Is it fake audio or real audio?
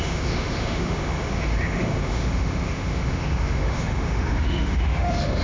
fake